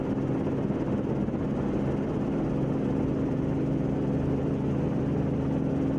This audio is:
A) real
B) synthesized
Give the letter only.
A